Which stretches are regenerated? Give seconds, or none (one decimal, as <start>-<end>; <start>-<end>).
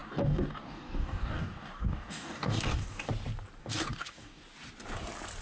0.0-3.1; 3.6-4.4